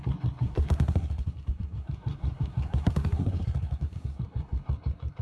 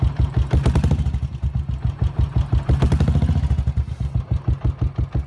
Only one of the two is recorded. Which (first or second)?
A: second